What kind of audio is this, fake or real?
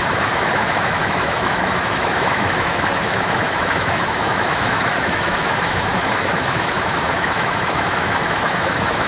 fake